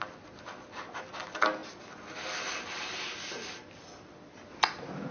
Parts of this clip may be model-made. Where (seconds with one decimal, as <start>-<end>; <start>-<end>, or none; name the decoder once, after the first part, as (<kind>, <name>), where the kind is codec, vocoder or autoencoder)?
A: none